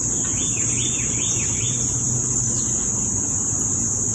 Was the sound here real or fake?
real